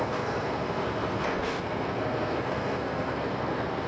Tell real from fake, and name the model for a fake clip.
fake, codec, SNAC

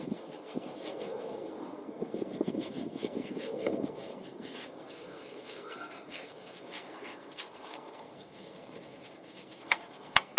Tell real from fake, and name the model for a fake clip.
fake, codec, SNAC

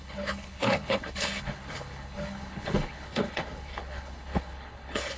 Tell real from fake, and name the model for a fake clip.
fake, codec, HILCodec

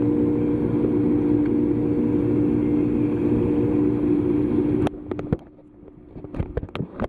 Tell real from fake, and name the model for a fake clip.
real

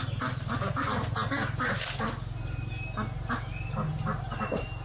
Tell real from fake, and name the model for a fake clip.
real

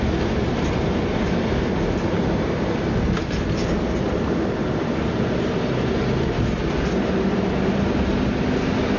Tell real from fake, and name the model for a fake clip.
real